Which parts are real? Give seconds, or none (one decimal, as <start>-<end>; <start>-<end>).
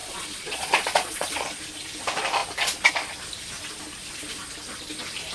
1.4-5.3